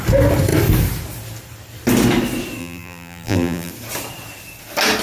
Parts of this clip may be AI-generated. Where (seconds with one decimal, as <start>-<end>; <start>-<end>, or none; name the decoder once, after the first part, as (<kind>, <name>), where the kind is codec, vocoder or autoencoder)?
2.6-3.7 (vocoder, BigVGAN v2)